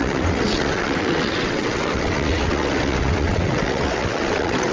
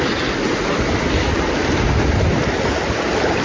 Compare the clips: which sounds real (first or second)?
second